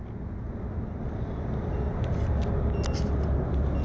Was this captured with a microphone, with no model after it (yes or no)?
yes